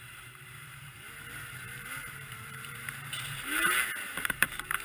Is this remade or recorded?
remade